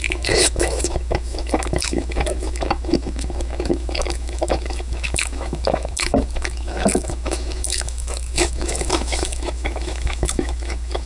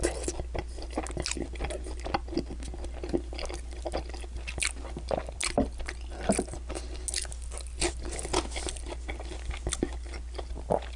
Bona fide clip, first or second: second